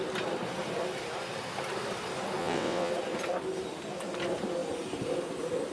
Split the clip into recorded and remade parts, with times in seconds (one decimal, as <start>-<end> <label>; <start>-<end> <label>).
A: 0.0-2.4 recorded; 2.4-2.9 remade; 2.9-5.7 recorded